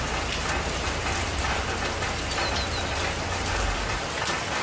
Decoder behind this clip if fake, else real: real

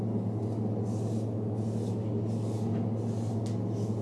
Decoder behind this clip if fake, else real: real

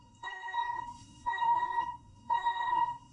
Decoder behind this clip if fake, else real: fake, codec, SNAC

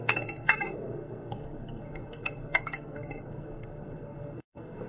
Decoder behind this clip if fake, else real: fake, codec, SNAC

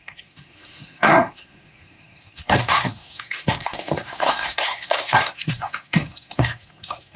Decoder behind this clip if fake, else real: fake, codec, SNAC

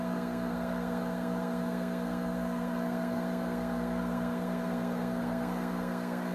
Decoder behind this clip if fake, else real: fake, codec, SNAC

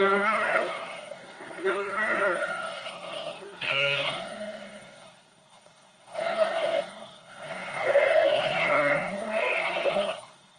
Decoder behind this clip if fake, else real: fake, codec, SNAC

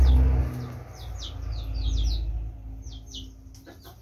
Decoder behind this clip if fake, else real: real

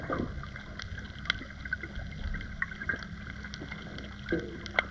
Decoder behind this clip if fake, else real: real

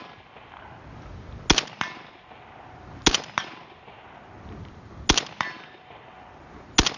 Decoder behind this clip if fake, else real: real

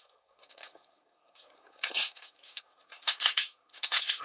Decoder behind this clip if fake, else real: fake, codec, SNAC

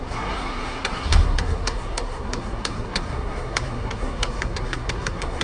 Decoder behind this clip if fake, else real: fake, codec, SNAC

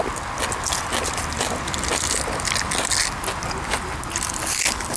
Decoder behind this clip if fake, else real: real